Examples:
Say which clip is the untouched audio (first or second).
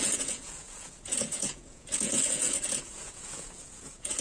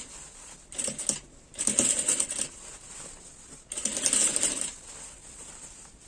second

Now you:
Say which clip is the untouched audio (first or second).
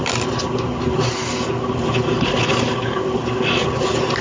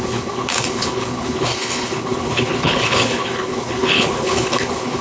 first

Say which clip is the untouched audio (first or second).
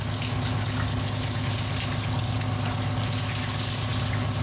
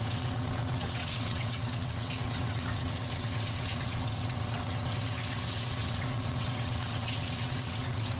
first